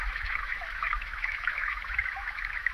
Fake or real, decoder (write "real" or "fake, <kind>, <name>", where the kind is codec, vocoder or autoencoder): fake, autoencoder, DAC-VAE